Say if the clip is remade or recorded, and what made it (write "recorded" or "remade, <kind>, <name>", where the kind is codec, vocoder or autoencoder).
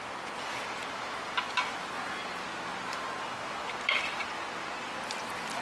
recorded